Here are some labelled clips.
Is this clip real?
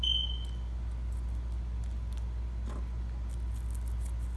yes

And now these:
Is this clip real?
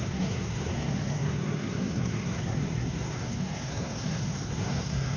no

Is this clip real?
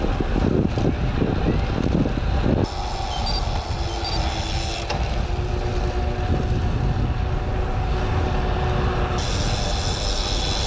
yes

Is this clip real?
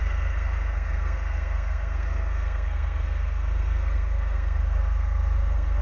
no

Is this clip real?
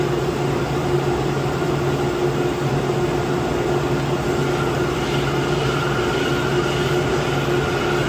yes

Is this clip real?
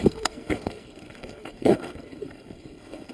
no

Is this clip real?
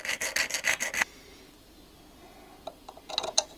yes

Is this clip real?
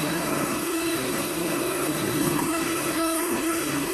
no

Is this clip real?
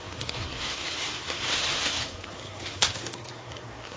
no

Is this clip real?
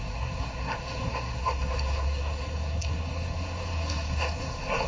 no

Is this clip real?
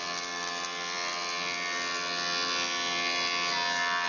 yes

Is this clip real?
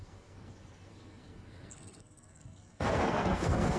no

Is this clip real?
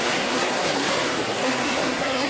no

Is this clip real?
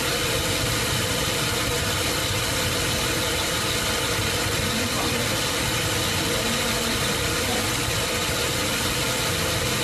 yes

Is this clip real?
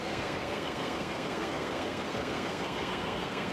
no